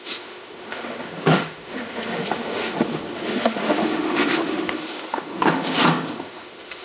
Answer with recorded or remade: remade